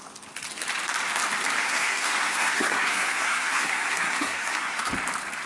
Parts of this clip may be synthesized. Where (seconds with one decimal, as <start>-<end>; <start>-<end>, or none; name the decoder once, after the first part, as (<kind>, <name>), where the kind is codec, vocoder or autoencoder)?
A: 1.6-4.9 (codec, SNAC)